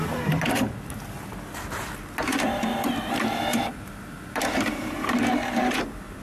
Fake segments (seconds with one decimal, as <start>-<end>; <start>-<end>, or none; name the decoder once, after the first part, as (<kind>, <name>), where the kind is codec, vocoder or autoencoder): 2.7-5.8 (vocoder, BigVGAN v2)